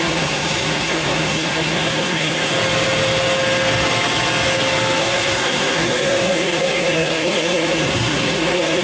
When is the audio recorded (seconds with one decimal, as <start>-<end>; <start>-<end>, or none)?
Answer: 2.5-5.0